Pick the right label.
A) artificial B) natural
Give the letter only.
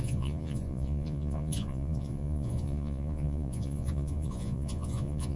A